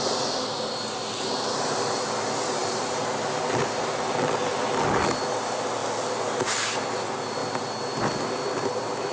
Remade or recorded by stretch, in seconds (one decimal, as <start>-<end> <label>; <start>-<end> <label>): 0.0-9.1 recorded